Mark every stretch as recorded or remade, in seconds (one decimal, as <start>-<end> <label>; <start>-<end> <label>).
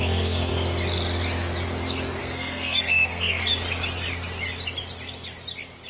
0.0-0.5 remade; 0.5-2.2 recorded; 2.2-3.5 remade; 3.5-5.9 recorded